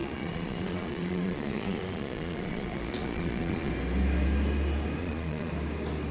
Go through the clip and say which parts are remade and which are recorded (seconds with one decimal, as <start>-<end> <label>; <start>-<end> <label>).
0.0-3.7 remade; 3.7-5.0 recorded; 5.0-5.5 remade; 5.5-6.1 recorded

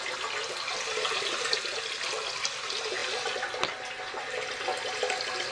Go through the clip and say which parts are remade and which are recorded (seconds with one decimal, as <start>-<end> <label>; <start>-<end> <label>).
0.0-5.5 recorded

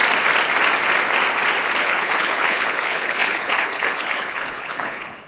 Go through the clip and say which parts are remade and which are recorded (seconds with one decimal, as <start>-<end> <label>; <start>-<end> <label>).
0.0-1.8 recorded; 1.8-5.3 remade